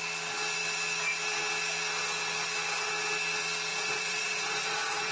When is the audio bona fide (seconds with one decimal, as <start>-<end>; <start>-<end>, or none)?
0.0-3.7